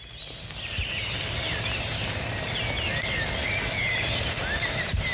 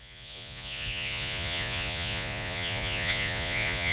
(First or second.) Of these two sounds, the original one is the first